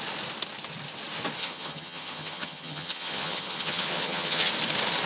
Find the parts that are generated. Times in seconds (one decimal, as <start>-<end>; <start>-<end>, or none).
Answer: 1.4-4.5